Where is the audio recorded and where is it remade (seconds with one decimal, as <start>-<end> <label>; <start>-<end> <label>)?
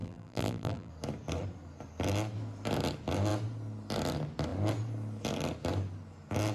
0.0-0.9 remade; 0.9-6.5 recorded